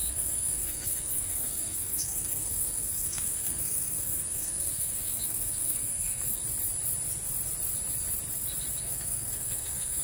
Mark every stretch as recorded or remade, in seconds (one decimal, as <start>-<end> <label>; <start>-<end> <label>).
0.0-6.4 remade; 6.4-8.8 recorded; 8.8-10.0 remade